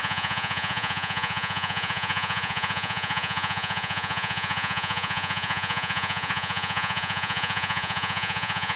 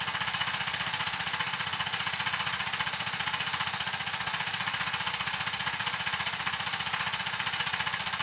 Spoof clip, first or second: first